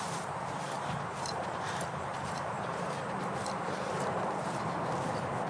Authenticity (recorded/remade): remade